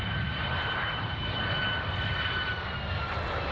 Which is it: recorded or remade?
recorded